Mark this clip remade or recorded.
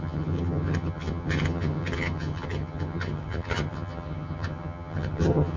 remade